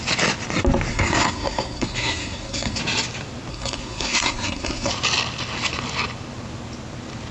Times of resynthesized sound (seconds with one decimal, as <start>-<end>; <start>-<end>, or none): 0.9-2.8; 3.5-4.9